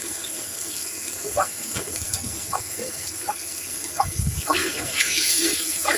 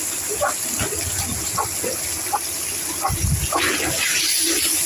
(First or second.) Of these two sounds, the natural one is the second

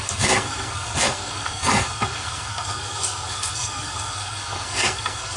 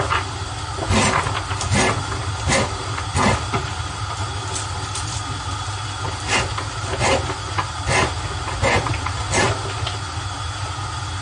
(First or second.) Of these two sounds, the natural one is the second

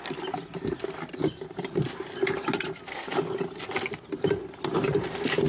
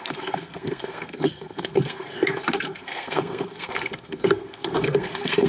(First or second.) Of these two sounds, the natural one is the first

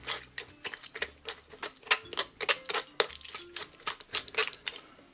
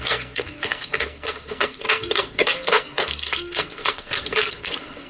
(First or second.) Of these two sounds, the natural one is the first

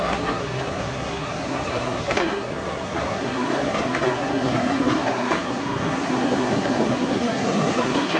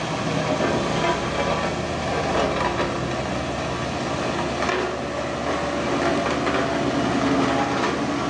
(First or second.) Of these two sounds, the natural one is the second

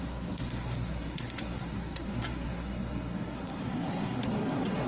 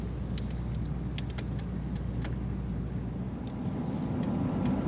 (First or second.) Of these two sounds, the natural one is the second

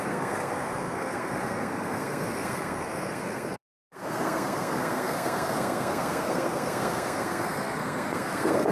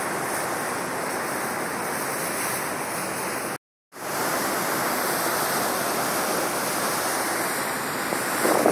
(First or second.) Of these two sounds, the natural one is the second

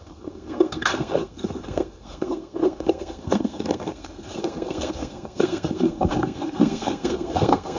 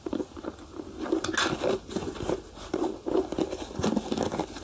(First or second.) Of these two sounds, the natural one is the second